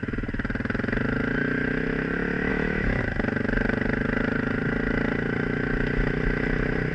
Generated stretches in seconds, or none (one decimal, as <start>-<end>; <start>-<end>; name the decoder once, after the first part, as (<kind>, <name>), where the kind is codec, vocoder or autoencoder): 2.5-3.0 (autoencoder, DAC-VAE)